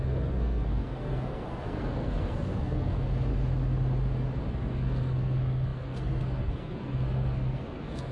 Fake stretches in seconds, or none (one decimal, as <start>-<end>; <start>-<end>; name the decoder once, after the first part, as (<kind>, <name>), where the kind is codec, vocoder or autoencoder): 0.0-3.3 (codec, SNAC); 4.5-8.1